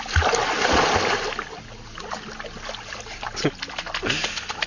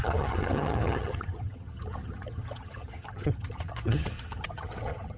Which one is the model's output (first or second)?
second